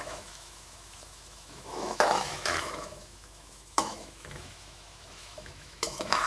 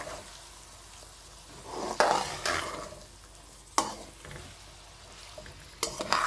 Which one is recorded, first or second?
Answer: second